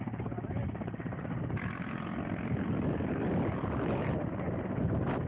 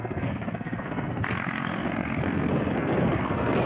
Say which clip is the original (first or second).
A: first